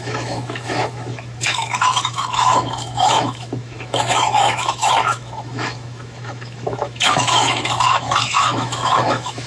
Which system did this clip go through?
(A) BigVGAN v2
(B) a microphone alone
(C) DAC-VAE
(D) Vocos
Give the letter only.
C